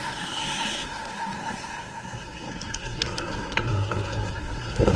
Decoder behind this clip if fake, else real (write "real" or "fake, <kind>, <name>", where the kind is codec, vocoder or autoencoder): fake, codec, SNAC